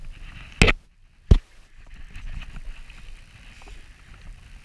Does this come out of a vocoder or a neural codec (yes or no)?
no